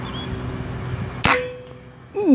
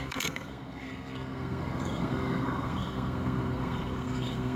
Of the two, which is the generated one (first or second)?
second